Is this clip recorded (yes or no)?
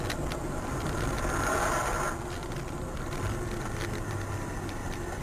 yes